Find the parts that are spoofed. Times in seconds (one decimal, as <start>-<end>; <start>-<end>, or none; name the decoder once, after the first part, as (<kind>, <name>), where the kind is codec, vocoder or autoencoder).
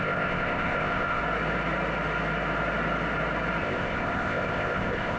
0.0-1.2 (codec, ZipCodec); 3.6-5.2